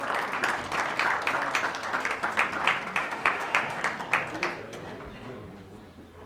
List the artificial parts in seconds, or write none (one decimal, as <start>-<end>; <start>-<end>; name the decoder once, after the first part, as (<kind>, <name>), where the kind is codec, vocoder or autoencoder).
3.0-3.8 (autoencoder, DAC-VAE)